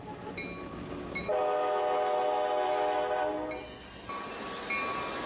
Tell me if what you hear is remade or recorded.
recorded